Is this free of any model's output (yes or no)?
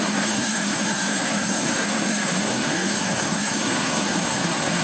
no